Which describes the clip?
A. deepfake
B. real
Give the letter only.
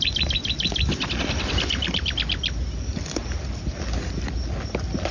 B